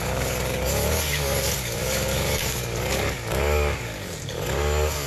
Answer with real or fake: fake